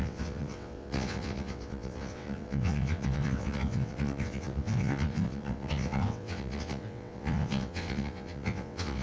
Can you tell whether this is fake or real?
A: fake